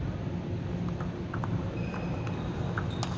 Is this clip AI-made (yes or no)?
no